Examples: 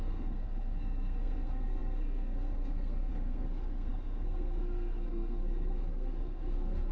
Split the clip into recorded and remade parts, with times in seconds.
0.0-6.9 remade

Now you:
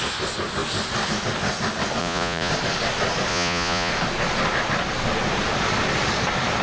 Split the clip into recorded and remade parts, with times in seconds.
0.0-2.0 recorded; 2.0-2.5 remade; 2.5-3.3 recorded; 3.3-3.9 remade; 3.9-6.6 recorded

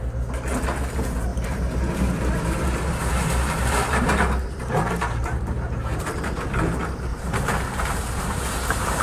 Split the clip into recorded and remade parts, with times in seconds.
0.0-1.3 recorded; 1.3-6.0 remade; 6.0-7.1 recorded; 7.1-9.0 remade

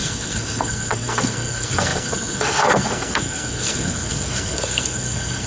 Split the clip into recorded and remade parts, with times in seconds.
0.0-5.5 remade

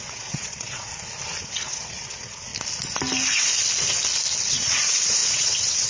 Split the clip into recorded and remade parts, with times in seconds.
0.0-0.9 remade; 0.9-1.4 recorded; 1.4-2.5 remade; 2.5-4.5 recorded; 4.5-5.9 remade

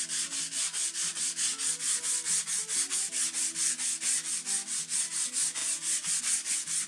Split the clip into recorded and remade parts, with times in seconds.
0.0-6.9 recorded

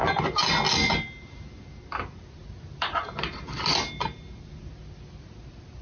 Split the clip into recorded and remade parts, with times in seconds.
0.0-5.8 recorded

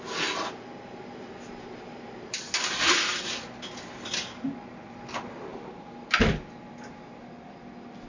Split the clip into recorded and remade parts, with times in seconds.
0.0-8.1 recorded